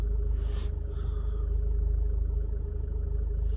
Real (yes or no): yes